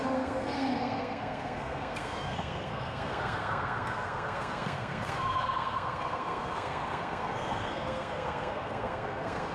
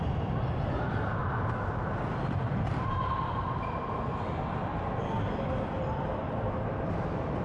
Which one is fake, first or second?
first